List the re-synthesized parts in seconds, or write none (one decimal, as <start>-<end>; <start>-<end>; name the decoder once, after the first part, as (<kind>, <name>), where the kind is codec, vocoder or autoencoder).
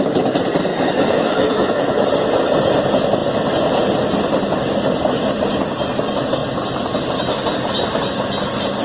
0.7-2.1 (autoencoder, DAC-VAE)